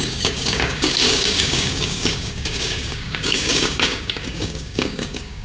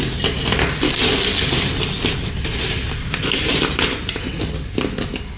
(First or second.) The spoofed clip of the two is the first